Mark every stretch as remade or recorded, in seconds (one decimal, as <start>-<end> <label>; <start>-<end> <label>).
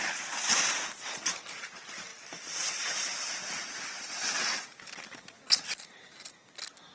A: 0.0-6.9 recorded